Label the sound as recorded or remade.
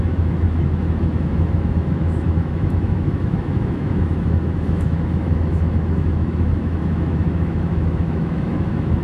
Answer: remade